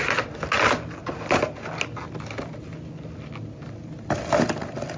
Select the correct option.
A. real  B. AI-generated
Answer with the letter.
A